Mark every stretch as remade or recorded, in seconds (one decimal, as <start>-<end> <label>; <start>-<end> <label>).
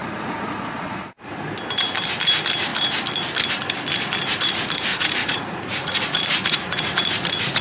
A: 0.0-1.3 remade; 1.3-4.9 recorded; 4.9-7.6 remade